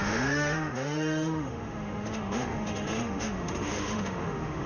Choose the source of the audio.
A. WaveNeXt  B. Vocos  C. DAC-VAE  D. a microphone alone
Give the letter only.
C